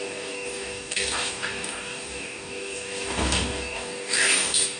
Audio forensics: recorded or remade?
remade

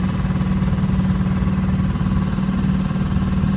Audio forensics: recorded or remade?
recorded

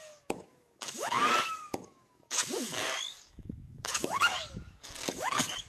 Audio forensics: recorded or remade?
remade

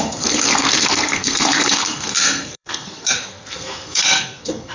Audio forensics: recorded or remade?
remade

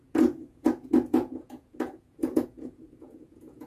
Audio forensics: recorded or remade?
remade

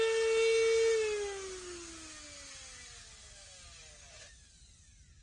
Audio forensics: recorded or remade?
recorded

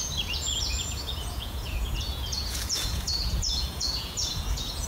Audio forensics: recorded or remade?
remade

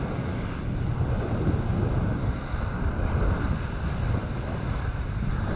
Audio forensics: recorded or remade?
recorded